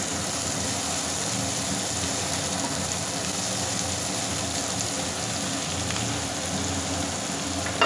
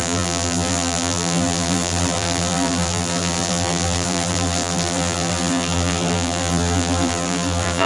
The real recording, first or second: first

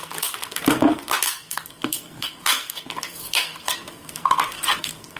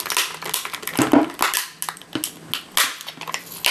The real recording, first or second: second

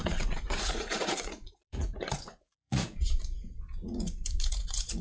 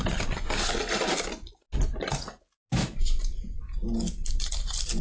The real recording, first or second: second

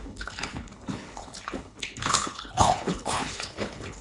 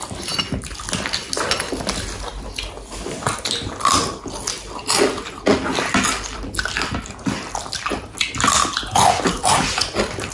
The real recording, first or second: second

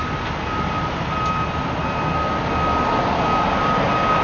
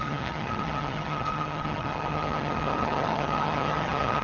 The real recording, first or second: first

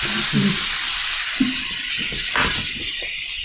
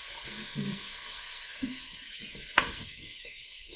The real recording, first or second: first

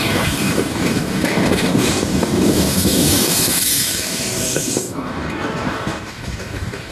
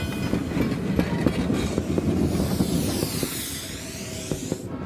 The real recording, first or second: second